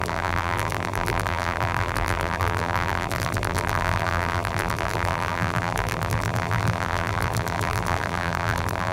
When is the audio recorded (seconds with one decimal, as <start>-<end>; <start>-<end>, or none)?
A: none